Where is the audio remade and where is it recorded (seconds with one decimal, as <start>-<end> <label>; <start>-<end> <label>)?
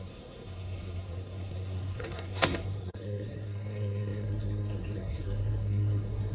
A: 0.0-6.3 remade